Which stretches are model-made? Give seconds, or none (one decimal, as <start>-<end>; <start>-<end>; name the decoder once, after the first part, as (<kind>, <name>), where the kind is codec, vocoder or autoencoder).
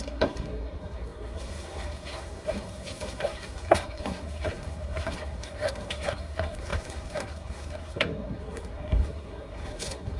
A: 0.0-10.2 (codec, SNAC)